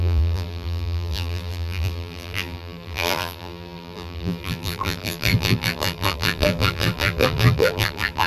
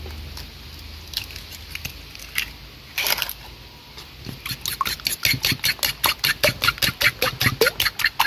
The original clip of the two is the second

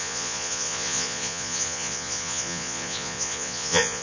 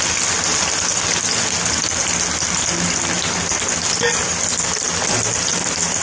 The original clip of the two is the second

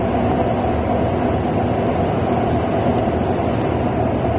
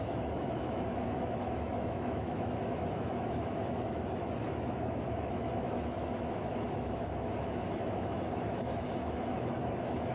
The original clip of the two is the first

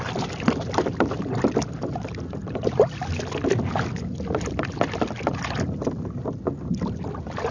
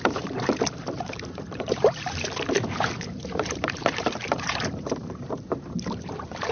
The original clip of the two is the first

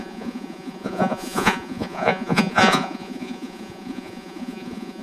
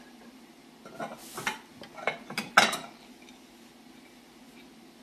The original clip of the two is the second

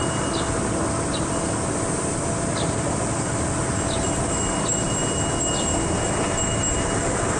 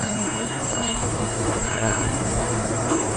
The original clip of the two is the first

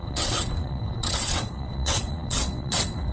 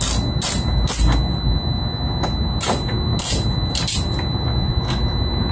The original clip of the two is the second